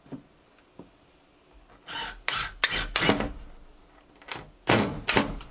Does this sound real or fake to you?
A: real